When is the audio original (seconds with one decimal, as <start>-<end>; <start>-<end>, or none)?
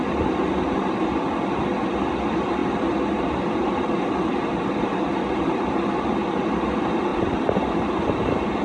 0.0-8.6